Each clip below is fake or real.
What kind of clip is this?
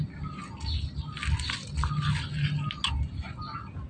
real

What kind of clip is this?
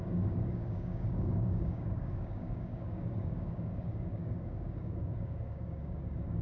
fake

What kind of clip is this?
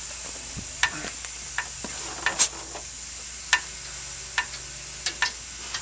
real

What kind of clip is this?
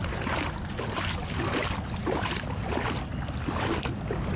real